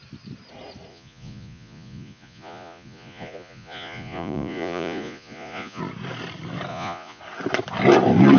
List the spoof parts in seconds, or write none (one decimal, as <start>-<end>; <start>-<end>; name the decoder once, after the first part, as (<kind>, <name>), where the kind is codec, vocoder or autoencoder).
0.9-5.8 (vocoder, Vocos); 6.7-7.2